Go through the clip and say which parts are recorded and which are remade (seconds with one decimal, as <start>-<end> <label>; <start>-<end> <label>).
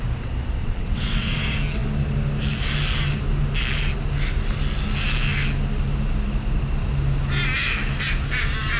0.0-0.6 recorded; 0.6-1.4 remade; 1.4-8.8 recorded